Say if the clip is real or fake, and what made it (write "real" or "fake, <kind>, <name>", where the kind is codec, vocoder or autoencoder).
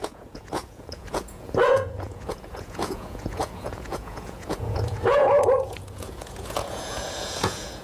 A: fake, vocoder, Vocos